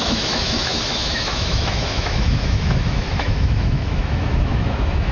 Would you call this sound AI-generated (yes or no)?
yes